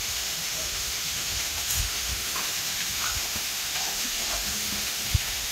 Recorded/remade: remade